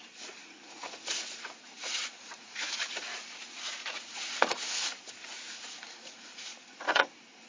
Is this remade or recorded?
remade